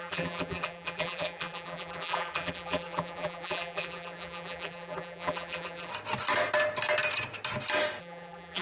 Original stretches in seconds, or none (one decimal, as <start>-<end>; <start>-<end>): 5.9-8.0